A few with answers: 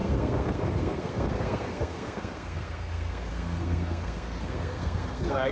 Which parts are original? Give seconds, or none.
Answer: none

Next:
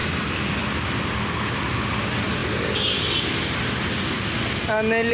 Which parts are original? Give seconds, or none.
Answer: 0.0-5.1

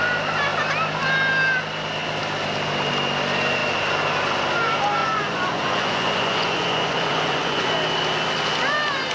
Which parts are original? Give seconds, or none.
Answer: 0.0-5.0; 7.7-9.1

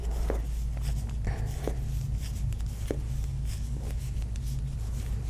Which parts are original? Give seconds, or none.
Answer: 0.0-3.3; 4.0-5.3

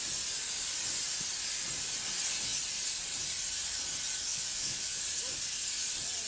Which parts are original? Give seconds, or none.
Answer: 0.0-4.3; 5.0-6.3

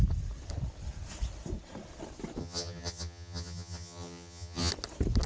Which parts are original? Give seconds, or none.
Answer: 0.0-2.4; 4.7-5.3

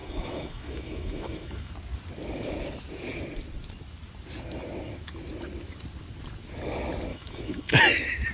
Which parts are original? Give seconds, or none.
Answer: 1.7-7.1; 7.8-8.3

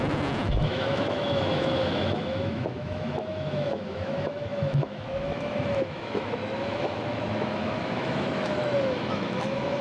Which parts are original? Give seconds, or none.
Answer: none